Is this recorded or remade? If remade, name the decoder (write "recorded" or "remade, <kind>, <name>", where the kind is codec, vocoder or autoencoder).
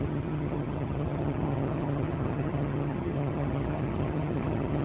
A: remade, vocoder, HiFi-GAN